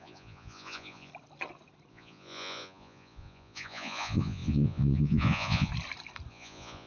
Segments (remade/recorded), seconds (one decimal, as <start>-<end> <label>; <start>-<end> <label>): 0.0-1.1 remade; 1.1-1.9 recorded; 1.9-5.7 remade; 5.7-6.3 recorded; 6.3-6.9 remade